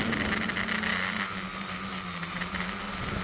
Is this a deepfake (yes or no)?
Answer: no